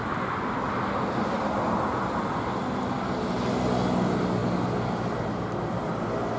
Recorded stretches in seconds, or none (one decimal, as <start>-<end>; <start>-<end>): 0.0-6.4